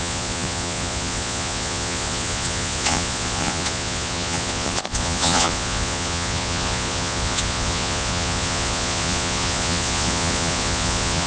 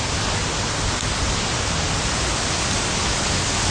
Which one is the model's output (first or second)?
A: first